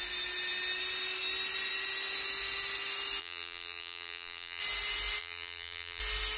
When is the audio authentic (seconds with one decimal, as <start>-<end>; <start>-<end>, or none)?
0.0-3.2; 4.6-5.2; 6.0-6.4